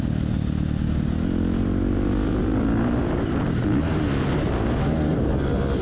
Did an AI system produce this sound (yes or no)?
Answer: no